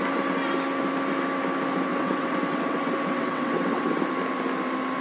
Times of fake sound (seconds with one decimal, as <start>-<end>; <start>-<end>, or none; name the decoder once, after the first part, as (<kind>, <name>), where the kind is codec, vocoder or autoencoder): 1.9-4.0 (vocoder, WaveNeXt)